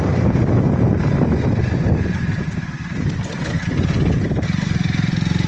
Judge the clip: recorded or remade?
recorded